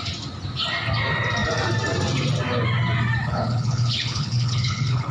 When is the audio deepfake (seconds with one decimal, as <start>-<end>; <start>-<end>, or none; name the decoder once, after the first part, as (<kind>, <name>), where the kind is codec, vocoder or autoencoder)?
3.2-5.1 (codec, HILCodec)